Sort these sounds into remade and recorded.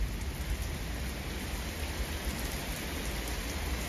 recorded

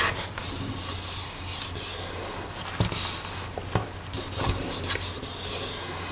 recorded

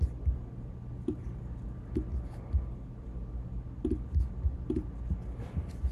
recorded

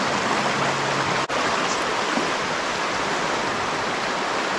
recorded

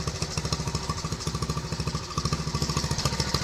recorded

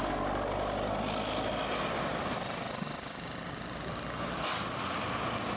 recorded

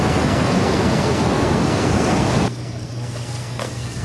remade